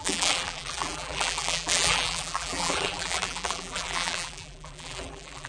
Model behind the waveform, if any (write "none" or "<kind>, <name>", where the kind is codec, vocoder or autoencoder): vocoder, BigVGAN v2